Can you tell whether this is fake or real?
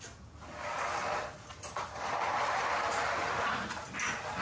real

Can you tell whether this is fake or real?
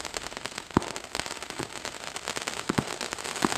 fake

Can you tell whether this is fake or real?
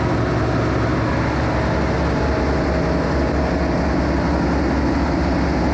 real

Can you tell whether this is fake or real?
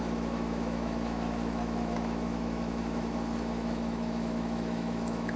fake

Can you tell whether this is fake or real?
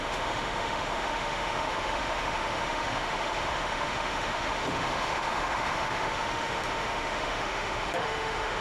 fake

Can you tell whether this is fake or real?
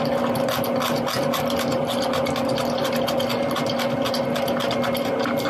real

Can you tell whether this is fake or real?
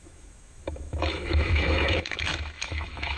fake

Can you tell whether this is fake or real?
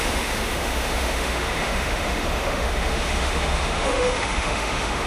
fake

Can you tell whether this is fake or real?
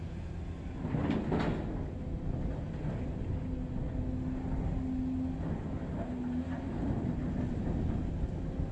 real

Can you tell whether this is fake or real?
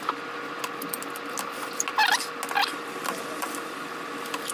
real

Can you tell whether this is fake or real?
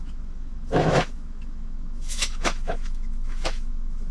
fake